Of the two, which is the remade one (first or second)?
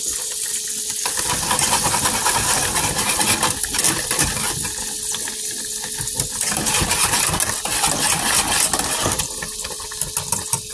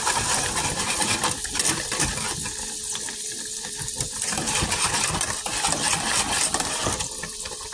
second